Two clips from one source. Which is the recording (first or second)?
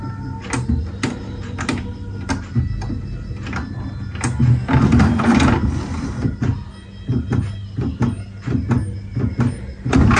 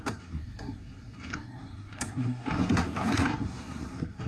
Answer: first